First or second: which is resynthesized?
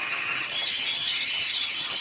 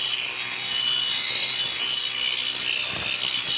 first